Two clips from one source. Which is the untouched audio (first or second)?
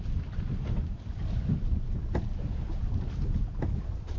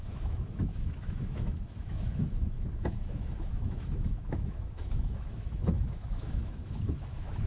first